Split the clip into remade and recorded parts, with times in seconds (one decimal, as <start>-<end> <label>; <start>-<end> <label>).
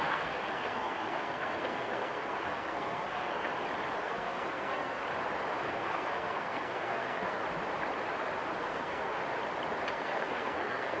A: 0.0-3.5 remade; 3.5-4.0 recorded; 4.0-5.0 remade; 5.0-5.6 recorded; 5.6-7.4 remade; 7.4-8.6 recorded; 8.6-9.2 remade; 9.2-9.9 recorded; 9.9-11.0 remade